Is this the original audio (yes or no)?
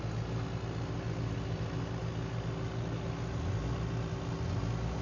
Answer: yes